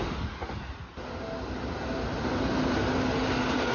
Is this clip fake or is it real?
real